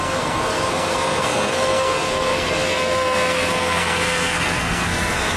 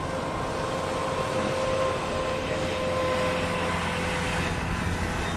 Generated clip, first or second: first